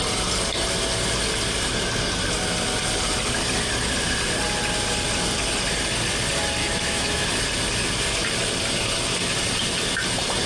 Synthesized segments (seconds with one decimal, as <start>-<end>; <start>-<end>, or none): 6.6-7.3